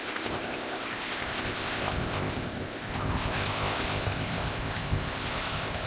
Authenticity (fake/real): fake